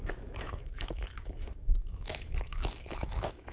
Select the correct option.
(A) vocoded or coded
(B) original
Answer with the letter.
A